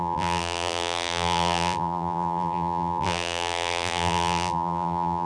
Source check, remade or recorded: remade